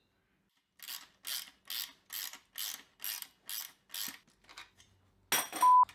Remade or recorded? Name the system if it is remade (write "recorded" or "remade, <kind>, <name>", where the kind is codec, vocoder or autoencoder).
recorded